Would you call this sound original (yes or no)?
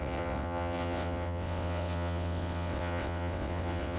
no